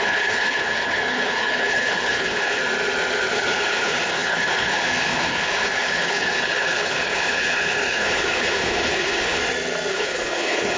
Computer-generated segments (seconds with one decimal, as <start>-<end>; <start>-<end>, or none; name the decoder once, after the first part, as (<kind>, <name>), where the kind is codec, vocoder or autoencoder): 0.0-2.6 (codec, HILCodec); 3.3-9.4; 9.9-10.8